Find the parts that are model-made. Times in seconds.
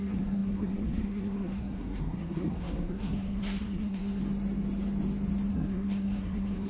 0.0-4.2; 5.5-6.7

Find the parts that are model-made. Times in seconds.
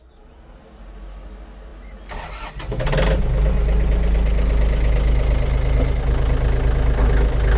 none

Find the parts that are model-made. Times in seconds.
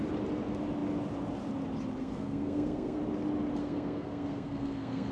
2.0-3.0; 3.6-5.1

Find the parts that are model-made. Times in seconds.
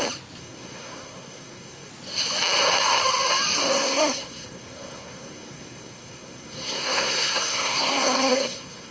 0.4-1.9; 3.7-8.9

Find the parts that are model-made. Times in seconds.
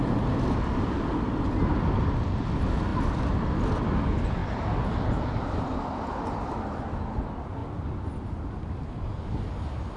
none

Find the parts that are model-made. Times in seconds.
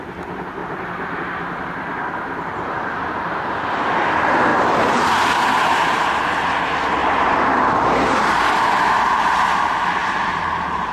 4.5-6.0; 7.0-9.2; 10.0-10.9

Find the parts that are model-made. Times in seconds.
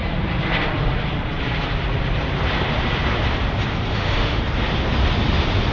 3.9-4.4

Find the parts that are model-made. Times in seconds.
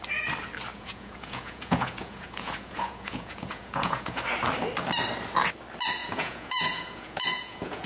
0.7-4.2; 6.0-7.9